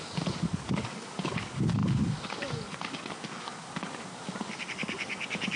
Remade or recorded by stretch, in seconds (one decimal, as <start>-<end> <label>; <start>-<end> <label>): 0.0-5.6 remade